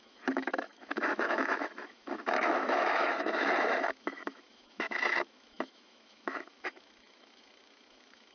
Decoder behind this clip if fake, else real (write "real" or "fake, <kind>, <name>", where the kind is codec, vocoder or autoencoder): fake, autoencoder, DAC-VAE